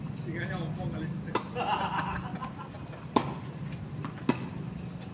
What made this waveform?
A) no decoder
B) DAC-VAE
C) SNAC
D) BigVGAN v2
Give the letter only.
A